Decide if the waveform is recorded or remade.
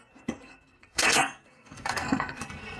remade